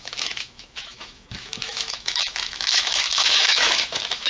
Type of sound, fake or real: fake